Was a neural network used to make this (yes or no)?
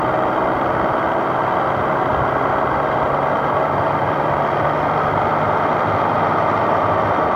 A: yes